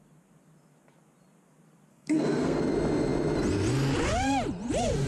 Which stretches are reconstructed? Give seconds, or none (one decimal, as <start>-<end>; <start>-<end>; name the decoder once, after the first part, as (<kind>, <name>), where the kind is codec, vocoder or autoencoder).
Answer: 1.9-2.6 (codec, SNAC)